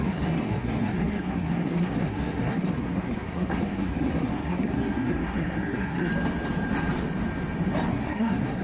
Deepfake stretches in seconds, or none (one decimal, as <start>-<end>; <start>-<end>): 0.0-6.1; 7.9-8.6